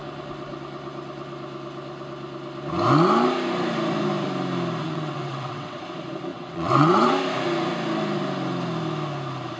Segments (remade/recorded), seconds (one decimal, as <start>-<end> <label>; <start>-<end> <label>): 0.0-4.8 recorded; 4.8-5.8 remade; 5.8-6.3 recorded; 6.3-7.1 remade; 7.1-9.6 recorded